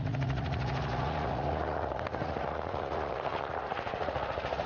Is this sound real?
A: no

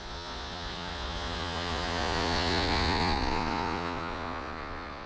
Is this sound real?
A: no